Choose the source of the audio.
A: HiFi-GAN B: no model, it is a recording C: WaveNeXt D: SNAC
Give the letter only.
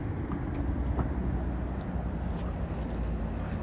B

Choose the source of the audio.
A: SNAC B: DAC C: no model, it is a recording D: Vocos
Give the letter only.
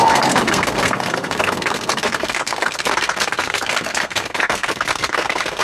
A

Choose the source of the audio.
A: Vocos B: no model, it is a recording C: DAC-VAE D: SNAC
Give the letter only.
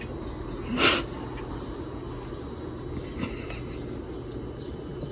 B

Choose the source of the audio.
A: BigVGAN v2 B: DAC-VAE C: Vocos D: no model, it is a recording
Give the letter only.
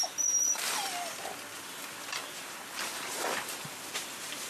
A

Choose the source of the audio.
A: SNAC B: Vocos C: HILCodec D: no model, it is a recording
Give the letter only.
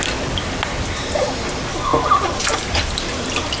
D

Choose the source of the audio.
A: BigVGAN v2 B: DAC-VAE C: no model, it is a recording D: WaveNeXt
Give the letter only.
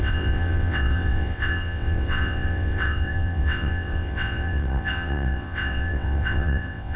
D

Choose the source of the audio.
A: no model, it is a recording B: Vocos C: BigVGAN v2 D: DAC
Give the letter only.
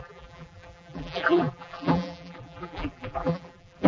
C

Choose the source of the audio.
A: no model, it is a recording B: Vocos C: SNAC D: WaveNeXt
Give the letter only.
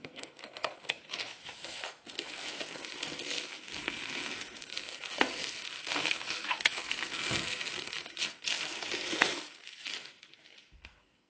C